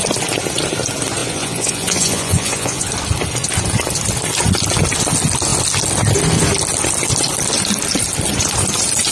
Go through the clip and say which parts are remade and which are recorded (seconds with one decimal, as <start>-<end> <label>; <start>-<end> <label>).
0.0-1.2 recorded; 1.2-2.9 remade; 2.9-9.1 recorded